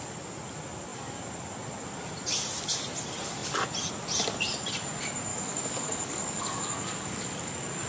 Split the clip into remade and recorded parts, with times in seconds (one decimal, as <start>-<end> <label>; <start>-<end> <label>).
0.0-5.3 recorded; 5.3-7.5 remade; 7.5-7.9 recorded